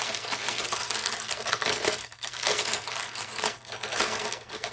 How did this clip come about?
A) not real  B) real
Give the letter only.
A